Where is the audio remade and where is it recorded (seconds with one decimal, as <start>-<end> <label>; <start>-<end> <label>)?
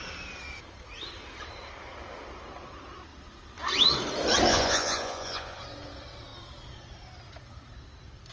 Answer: 0.0-4.5 recorded; 4.5-5.6 remade; 5.6-8.3 recorded